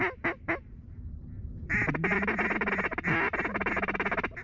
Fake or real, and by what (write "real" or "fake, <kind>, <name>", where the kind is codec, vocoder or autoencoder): real